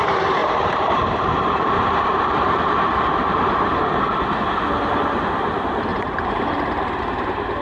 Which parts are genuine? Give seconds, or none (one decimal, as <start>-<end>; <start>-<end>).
0.0-0.4; 4.0-5.9; 7.0-7.6